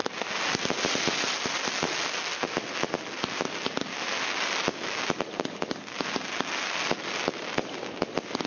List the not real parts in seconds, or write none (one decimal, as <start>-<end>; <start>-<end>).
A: none